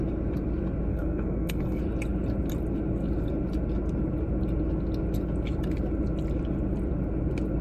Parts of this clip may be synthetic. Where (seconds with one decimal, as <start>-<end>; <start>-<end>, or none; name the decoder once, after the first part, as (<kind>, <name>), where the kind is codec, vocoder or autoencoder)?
0.9-1.8 (codec, SNAC)